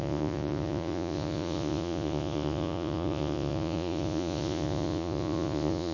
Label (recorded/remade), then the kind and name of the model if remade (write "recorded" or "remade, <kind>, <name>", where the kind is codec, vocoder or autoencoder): remade, vocoder, Vocos